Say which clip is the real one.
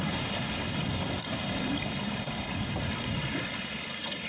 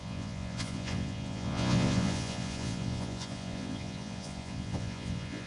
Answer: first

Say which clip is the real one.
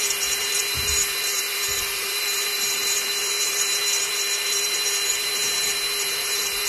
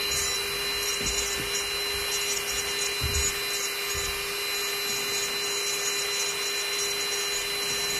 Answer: second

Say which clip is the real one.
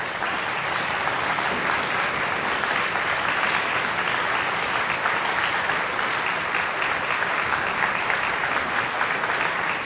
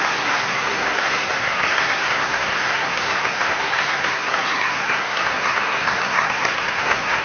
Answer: first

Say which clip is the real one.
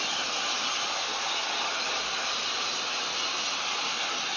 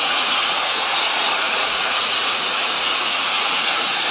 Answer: first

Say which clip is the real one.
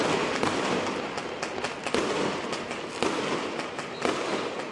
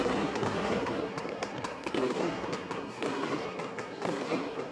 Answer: first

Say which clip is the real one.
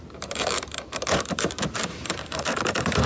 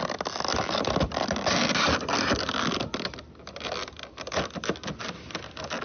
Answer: second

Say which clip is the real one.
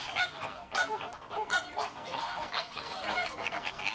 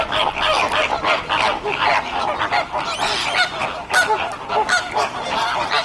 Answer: second